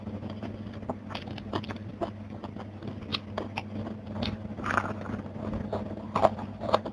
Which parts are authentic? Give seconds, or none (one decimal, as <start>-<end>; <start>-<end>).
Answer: 0.0-6.9